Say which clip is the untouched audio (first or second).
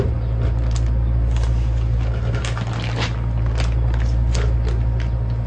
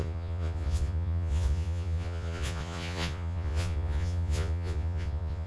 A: first